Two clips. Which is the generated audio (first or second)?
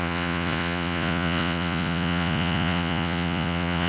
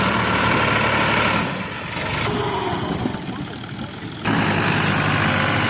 first